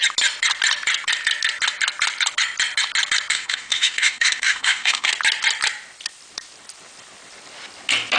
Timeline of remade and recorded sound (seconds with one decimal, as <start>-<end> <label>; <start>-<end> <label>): 0.0-3.3 recorded; 3.3-5.1 remade; 5.1-8.2 recorded